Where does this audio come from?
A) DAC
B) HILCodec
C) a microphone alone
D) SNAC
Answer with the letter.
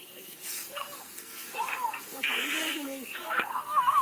D